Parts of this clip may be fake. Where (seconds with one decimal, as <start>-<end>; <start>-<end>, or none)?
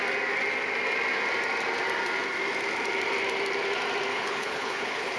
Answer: 4.1-5.2